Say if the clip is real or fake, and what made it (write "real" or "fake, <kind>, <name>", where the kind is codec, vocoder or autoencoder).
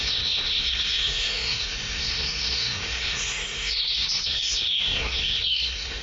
fake, codec, SNAC